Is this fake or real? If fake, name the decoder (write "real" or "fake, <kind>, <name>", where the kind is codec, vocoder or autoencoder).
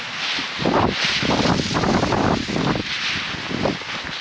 real